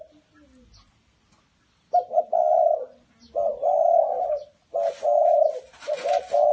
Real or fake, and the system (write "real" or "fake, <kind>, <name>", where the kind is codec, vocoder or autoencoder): real